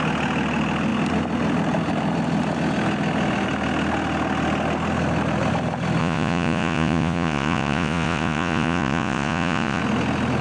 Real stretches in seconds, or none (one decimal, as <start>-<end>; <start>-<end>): 0.0-6.0; 9.8-10.4